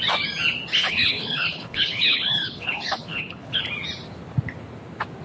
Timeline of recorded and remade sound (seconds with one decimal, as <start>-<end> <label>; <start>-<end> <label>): 0.0-0.7 recorded; 0.7-3.6 remade; 3.6-5.2 recorded